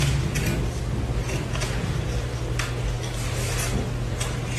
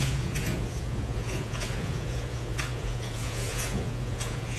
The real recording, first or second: first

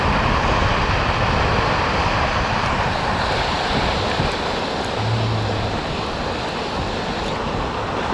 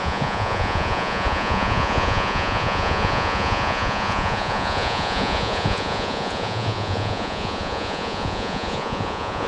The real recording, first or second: first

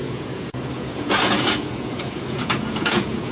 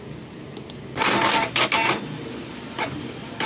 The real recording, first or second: second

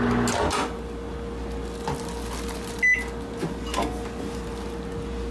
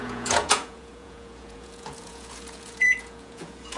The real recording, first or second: first